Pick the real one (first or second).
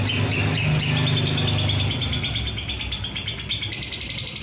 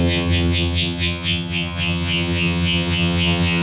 first